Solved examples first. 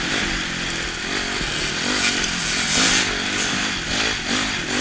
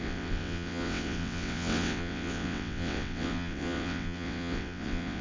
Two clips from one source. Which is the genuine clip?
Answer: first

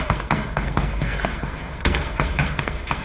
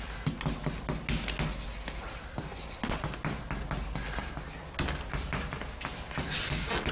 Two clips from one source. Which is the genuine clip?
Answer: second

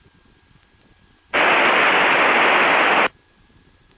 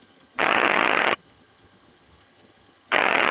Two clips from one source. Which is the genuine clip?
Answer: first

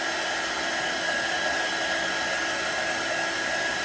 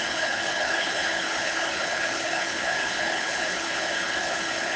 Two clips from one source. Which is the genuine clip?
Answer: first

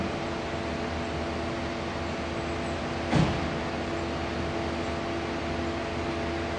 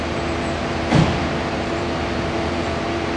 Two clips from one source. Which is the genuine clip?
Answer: first